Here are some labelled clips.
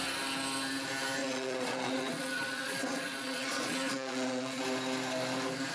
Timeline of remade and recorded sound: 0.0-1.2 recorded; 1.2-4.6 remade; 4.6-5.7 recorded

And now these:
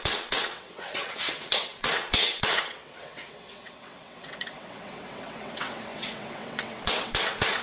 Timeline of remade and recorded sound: 0.0-7.6 remade

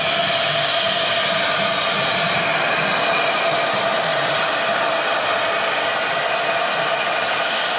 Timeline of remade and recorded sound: 0.0-7.8 recorded